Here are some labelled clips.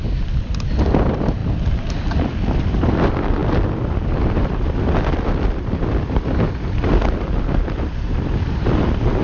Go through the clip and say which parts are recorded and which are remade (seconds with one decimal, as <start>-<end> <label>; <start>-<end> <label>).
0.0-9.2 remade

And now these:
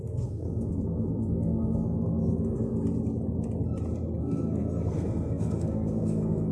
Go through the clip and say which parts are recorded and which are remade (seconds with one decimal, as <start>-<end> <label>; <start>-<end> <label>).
0.0-2.7 remade; 2.7-4.2 recorded; 4.2-6.5 remade

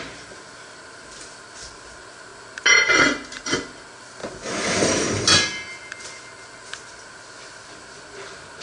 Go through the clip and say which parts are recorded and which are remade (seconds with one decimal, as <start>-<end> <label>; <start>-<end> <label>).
0.0-8.6 recorded